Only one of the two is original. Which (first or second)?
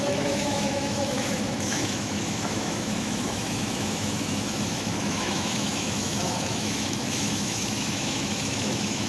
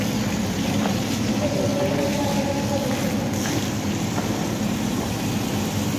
second